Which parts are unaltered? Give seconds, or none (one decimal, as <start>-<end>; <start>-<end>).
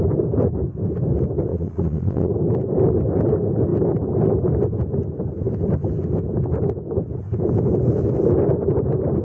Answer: 0.0-1.5; 2.3-9.2